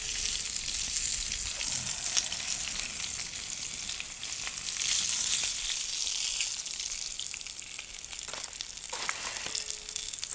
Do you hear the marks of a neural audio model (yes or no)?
no